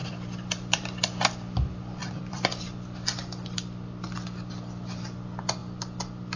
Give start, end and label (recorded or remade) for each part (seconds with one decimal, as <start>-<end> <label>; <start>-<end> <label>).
0.0-1.2 remade; 1.2-2.0 recorded; 2.0-2.6 remade; 2.6-6.4 recorded